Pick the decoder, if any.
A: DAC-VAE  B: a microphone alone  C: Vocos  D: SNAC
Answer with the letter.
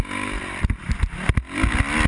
B